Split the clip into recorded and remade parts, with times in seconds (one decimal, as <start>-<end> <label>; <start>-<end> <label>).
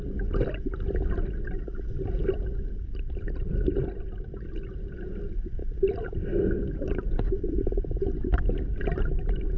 0.0-9.6 recorded